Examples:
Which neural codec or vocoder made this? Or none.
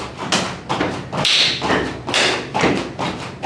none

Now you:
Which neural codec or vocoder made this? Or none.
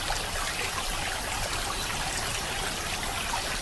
none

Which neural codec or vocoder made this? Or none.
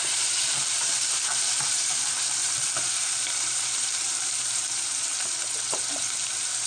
vocoder, BigVGAN v2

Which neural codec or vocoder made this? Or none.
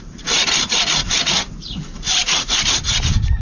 vocoder, BigVGAN v2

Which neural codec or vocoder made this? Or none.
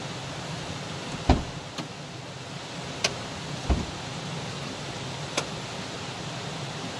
none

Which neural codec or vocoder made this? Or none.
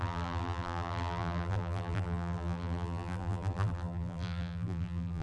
vocoder, BigVGAN v2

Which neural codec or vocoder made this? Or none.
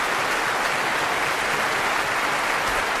none